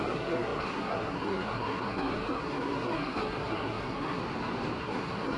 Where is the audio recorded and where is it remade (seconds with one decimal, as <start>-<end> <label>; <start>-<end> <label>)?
0.0-4.2 remade; 4.2-4.8 recorded; 4.8-5.4 remade